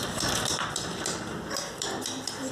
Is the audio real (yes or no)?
yes